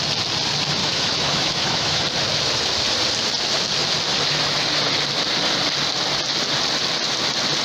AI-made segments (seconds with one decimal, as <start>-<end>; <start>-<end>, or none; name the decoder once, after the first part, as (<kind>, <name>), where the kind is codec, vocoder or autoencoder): 0.8-2.0 (autoencoder, DAC-VAE)